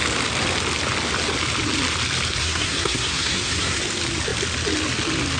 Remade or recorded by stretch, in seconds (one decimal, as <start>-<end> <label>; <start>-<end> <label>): 0.0-2.4 recorded; 2.4-3.8 remade; 3.8-5.4 recorded